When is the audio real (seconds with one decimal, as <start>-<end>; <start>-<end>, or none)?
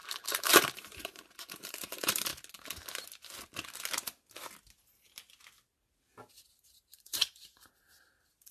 2.3-6.3